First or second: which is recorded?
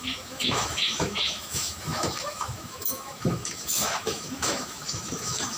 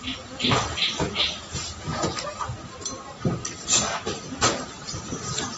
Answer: second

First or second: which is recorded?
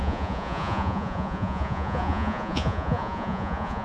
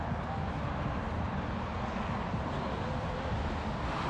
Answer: second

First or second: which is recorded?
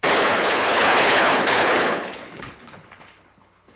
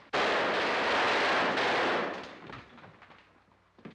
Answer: second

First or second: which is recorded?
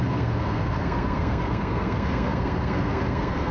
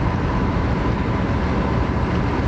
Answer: second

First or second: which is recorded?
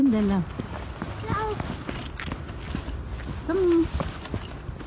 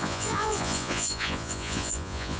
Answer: first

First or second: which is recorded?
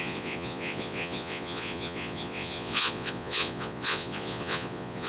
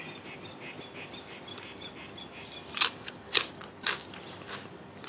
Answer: second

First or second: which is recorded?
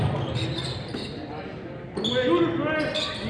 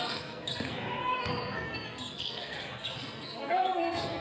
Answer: first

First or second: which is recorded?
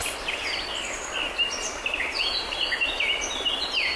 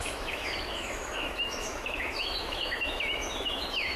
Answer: first